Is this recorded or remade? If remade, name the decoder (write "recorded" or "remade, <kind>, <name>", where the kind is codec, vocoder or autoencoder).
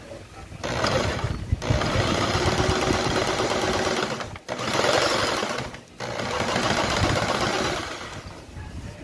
recorded